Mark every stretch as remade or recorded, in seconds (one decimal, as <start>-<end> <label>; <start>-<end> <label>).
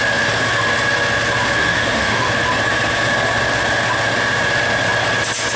0.0-1.6 recorded; 1.6-2.3 remade; 2.3-5.6 recorded